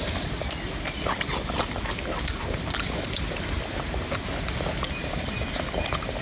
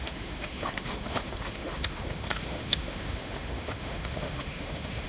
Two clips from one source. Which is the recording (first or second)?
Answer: first